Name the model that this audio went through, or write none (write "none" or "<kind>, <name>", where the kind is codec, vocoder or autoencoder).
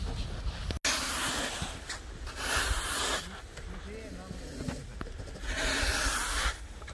none